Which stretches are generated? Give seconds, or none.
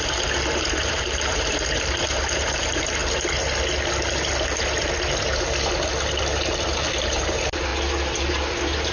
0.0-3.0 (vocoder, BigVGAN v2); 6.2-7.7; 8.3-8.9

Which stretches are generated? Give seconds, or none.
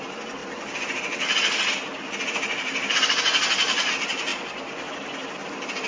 none